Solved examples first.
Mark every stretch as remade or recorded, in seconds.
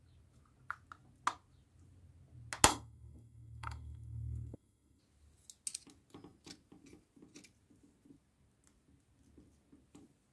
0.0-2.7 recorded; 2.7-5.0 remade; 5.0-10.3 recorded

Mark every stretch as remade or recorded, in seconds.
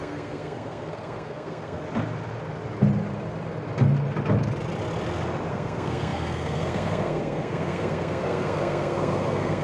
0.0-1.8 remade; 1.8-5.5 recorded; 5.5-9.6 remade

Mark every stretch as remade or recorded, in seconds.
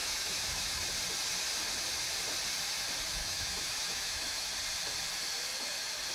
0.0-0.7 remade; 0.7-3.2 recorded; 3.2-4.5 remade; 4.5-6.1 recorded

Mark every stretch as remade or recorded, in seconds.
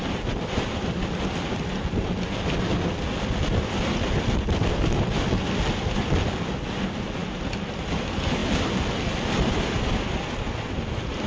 0.0-11.3 recorded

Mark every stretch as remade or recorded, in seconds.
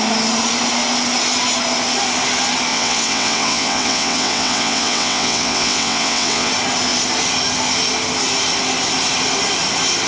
0.0-2.7 recorded; 2.7-6.5 remade; 6.5-10.1 recorded